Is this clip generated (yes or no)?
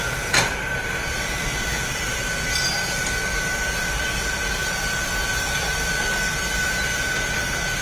yes